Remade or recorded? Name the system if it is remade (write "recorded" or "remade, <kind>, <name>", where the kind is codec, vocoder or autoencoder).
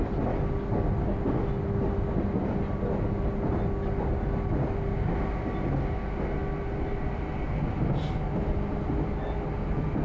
recorded